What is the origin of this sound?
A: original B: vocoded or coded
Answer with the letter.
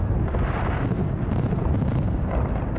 A